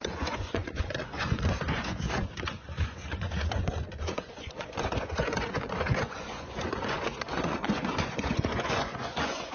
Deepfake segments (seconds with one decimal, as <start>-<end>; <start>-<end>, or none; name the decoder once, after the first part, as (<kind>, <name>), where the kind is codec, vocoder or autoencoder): 0.0-9.5 (vocoder, Vocos)